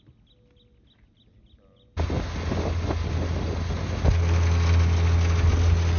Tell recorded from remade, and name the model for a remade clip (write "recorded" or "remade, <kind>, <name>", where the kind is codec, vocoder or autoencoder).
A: recorded